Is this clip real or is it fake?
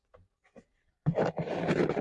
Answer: fake